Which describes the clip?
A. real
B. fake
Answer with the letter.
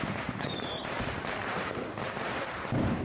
B